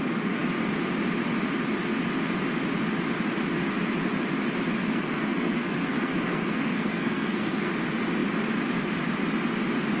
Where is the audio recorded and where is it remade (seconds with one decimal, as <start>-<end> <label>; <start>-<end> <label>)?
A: 0.0-4.8 recorded; 4.8-7.7 remade; 7.7-10.0 recorded